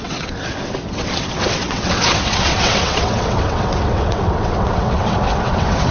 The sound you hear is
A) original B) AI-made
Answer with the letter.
B